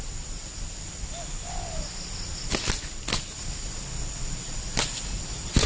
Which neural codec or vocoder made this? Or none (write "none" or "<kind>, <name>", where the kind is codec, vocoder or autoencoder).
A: none